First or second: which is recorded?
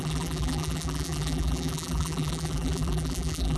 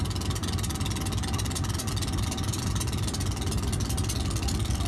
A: second